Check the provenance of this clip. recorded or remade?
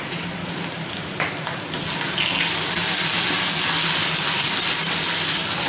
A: recorded